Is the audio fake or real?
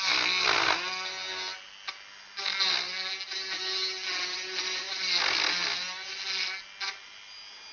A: real